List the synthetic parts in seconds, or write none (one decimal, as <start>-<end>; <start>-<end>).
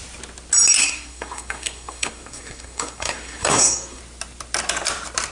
0.8-4.0